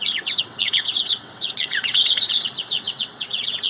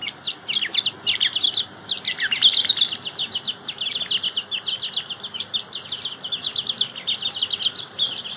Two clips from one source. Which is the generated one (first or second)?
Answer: first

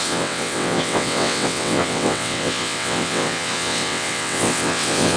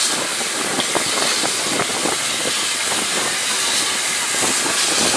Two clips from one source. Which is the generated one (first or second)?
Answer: first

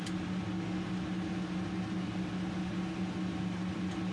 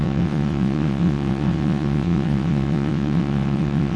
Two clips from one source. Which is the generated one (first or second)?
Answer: second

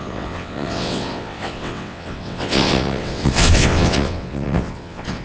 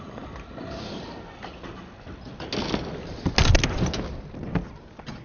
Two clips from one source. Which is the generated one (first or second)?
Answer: first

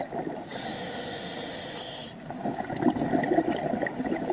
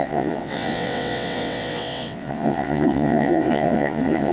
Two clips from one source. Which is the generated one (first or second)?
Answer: second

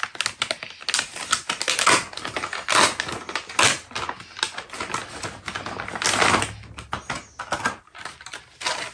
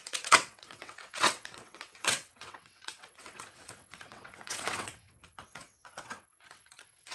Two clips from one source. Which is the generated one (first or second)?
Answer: second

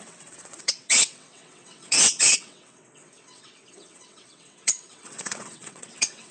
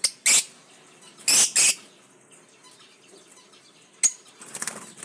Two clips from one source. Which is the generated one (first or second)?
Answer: first